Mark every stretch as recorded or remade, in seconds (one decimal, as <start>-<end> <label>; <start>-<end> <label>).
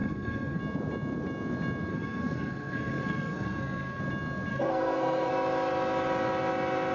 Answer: 0.0-0.6 remade; 0.6-1.9 recorded; 1.9-4.0 remade; 4.0-4.5 recorded; 4.5-5.3 remade; 5.3-6.9 recorded